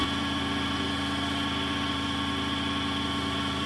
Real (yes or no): yes